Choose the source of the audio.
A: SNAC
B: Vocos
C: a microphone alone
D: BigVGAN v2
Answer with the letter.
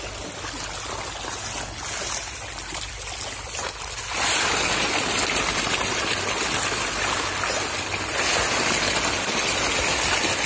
C